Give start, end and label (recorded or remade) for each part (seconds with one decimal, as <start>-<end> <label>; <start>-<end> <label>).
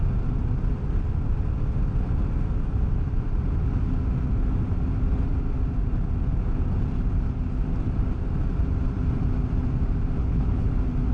0.0-10.2 recorded; 10.2-10.7 remade; 10.7-11.1 recorded